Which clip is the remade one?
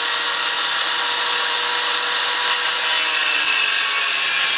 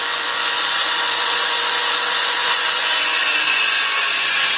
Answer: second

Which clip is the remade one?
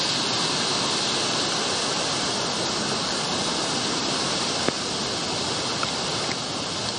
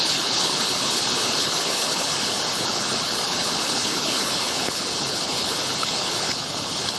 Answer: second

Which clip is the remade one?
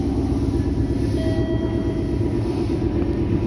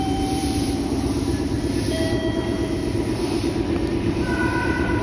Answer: second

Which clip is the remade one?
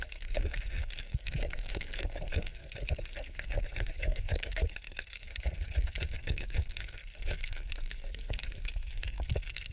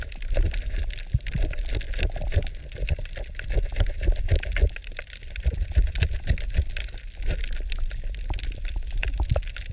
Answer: first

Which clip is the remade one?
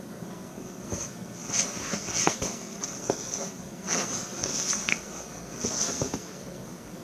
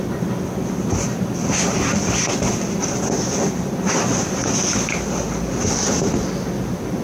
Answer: first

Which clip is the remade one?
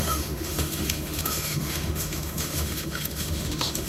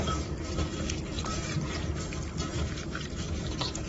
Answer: first